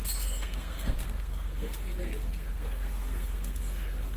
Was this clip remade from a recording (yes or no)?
yes